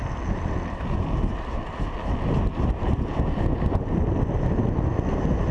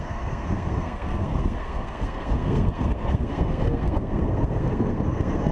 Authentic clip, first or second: first